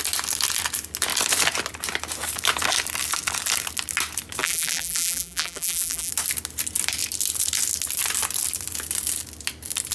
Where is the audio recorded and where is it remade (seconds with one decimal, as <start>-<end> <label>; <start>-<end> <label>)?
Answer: 0.0-4.4 recorded; 4.4-6.1 remade; 6.1-9.9 recorded